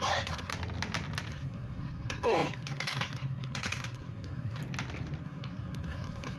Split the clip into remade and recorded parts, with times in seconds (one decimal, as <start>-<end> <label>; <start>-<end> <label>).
0.0-0.5 remade; 0.5-1.3 recorded; 1.3-4.6 remade; 4.6-5.2 recorded; 5.2-6.4 remade